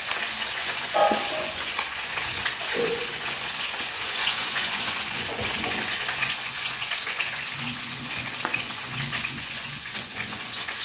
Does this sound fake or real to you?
fake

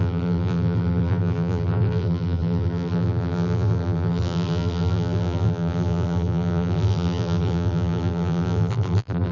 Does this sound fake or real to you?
fake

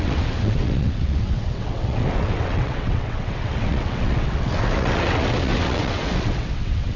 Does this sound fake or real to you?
fake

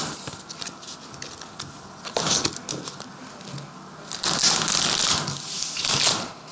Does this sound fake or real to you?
real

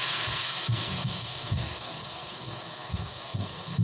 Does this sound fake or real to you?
fake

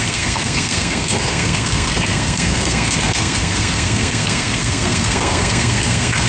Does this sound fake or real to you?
fake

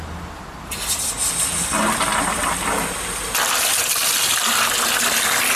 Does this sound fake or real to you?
real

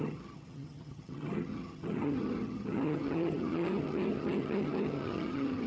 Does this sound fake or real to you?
fake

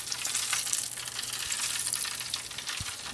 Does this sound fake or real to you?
real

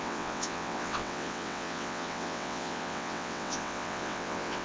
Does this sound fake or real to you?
fake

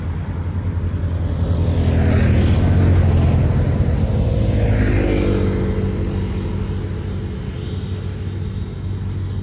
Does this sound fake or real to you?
real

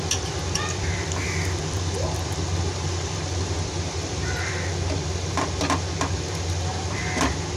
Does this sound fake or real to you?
fake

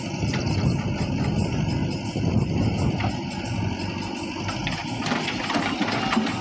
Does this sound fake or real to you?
real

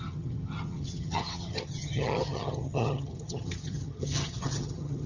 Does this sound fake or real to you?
fake